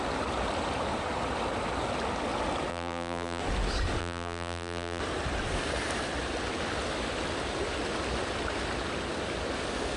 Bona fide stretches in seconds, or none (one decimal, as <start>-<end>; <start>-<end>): 0.0-2.7; 3.4-4.0; 5.0-10.0